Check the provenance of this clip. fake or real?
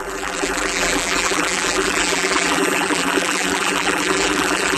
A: fake